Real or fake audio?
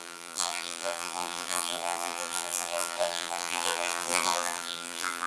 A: fake